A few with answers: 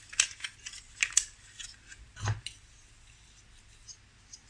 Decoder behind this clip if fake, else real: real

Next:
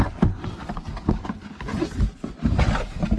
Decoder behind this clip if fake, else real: real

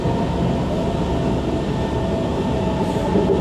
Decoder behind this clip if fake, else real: real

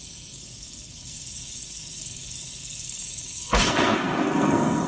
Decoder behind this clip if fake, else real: fake, codec, SNAC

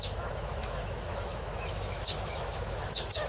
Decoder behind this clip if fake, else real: fake, autoencoder, DAC-VAE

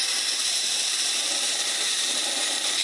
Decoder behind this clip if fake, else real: fake, vocoder, BigVGAN v2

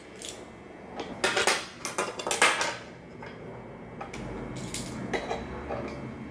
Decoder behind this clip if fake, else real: real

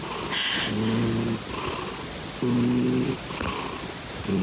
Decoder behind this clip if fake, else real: real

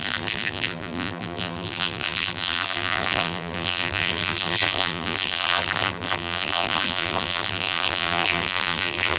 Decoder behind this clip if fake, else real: fake, vocoder, BigVGAN v2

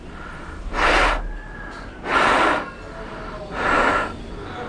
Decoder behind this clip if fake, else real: real